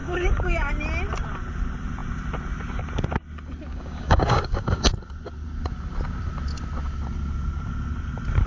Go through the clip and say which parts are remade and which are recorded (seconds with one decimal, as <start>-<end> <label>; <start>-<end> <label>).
0.0-0.7 remade; 0.7-3.7 recorded; 3.7-4.8 remade; 4.8-8.5 recorded